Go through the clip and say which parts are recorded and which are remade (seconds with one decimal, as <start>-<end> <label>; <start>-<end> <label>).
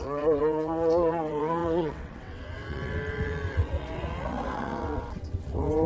0.0-5.9 remade